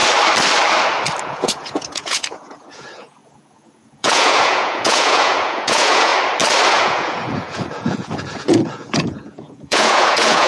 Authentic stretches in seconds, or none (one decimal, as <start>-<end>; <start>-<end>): 0.0-1.2; 6.1-6.7